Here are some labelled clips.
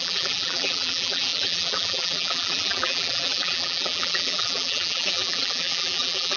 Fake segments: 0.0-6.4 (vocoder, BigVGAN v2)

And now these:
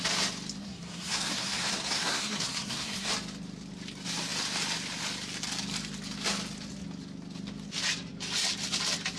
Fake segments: 0.6-3.1 (codec, SNAC)

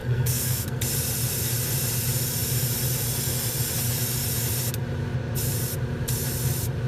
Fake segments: 0.0-0.8 (codec, SNAC)

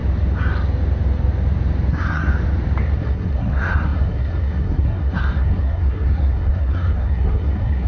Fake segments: 1.9-2.3 (codec, SNAC); 2.8-7.9

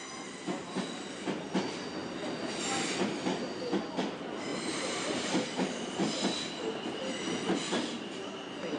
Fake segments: 4.5-5.9 (vocoder, BigVGAN v2)